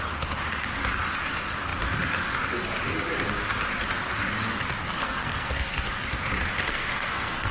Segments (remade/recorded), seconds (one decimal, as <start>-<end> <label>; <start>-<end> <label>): 0.0-5.0 recorded; 5.0-5.9 remade; 5.9-6.7 recorded; 6.7-7.5 remade